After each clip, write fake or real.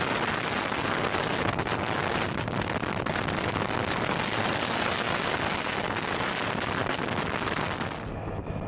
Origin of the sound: real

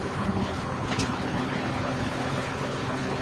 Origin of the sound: fake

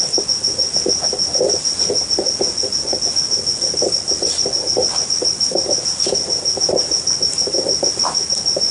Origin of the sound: real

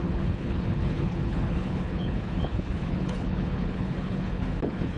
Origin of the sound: fake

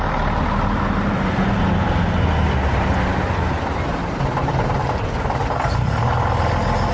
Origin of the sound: real